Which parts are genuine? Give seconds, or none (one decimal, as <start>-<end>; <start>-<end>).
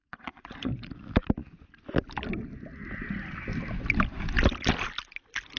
0.9-5.6